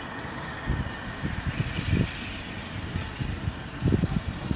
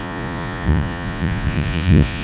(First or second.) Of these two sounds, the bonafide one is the first